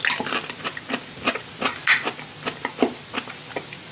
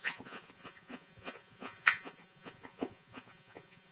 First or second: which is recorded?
first